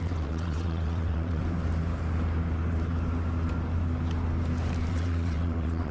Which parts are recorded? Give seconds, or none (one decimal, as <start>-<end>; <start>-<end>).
1.4-4.9